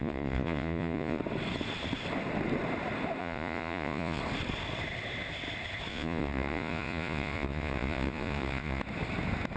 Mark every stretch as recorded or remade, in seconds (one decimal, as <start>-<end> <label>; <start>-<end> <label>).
0.0-1.2 remade; 1.2-3.2 recorded; 3.2-4.2 remade; 4.2-5.9 recorded; 5.9-8.8 remade; 8.8-9.6 recorded